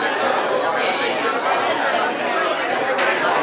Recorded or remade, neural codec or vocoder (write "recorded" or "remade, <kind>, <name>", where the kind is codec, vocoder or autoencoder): recorded